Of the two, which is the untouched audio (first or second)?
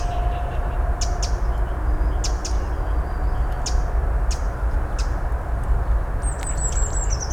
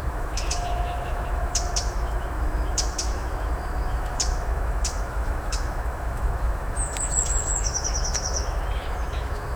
first